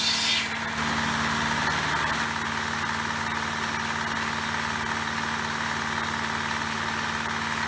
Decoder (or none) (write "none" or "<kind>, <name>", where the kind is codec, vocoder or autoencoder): none